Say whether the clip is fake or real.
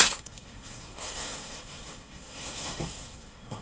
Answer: fake